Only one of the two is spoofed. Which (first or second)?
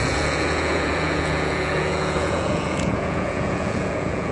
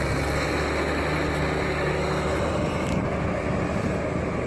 first